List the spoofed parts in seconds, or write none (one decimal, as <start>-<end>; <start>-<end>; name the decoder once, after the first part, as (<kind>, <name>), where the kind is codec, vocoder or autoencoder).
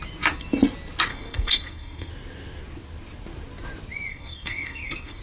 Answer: 1.1-2.1 (codec, SNAC); 4.1-5.2